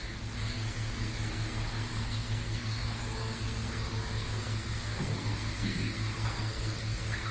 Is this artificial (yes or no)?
yes